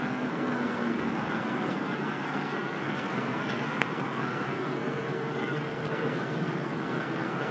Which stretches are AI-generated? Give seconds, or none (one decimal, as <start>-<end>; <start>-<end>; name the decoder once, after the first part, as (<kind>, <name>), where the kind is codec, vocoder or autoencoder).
0.0-7.5 (codec, SNAC)